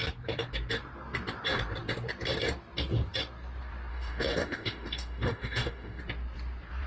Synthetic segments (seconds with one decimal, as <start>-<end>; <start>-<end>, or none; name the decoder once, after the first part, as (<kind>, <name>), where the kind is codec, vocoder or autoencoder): 3.9-6.0 (autoencoder, DAC-VAE)